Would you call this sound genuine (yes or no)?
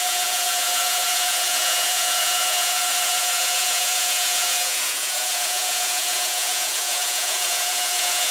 no